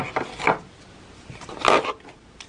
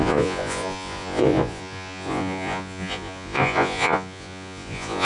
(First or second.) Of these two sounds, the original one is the first